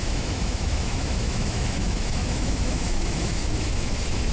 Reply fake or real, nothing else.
fake